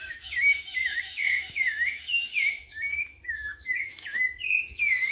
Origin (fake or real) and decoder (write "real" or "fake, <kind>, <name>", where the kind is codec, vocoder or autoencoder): fake, autoencoder, DAC-VAE